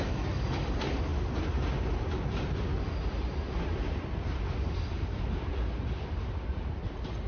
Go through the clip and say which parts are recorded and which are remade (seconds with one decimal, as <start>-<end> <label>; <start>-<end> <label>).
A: 0.0-7.3 recorded

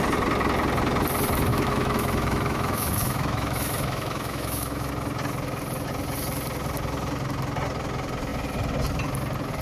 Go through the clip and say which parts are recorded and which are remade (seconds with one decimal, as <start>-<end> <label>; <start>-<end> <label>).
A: 0.0-1.5 recorded; 1.5-4.9 remade; 4.9-9.6 recorded

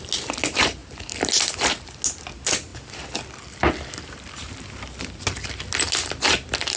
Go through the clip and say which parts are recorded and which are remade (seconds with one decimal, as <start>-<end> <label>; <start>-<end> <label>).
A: 0.0-6.8 recorded

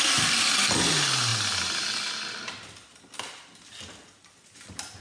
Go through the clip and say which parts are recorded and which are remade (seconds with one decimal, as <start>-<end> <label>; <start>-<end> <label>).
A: 0.0-5.0 recorded

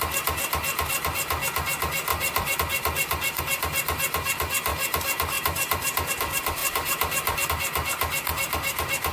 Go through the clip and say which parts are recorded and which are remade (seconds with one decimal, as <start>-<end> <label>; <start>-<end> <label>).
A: 0.0-2.1 recorded; 2.1-2.6 remade; 2.6-4.7 recorded; 4.7-6.1 remade; 6.1-6.6 recorded; 6.6-7.5 remade; 7.5-9.1 recorded

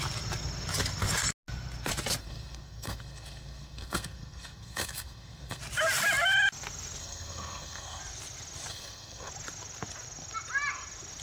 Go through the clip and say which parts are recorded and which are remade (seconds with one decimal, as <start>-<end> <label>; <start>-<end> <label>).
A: 0.0-2.2 recorded; 2.2-5.6 remade; 5.6-7.0 recorded; 7.0-8.0 remade; 8.0-8.7 recorded; 8.7-9.3 remade; 9.3-11.2 recorded

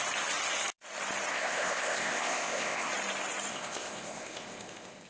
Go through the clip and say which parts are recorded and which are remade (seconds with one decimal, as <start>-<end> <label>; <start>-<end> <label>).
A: 0.0-1.3 recorded; 1.3-2.9 remade; 2.9-3.5 recorded; 3.5-5.1 remade